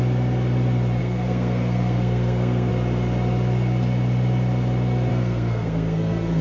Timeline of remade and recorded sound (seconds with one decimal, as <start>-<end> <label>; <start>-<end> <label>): 0.0-1.0 recorded; 1.0-2.7 remade; 2.7-5.1 recorded; 5.1-6.4 remade